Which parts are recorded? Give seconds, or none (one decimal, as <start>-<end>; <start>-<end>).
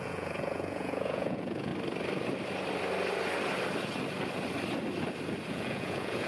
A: 1.7-5.5